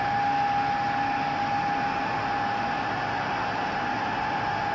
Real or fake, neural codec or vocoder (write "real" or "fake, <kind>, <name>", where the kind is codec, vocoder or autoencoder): real